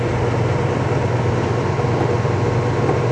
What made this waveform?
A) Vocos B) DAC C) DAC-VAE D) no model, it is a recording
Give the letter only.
D